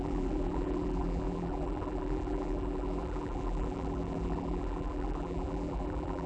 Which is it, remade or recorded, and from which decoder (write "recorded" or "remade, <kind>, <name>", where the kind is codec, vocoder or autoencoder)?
remade, vocoder, BigVGAN v2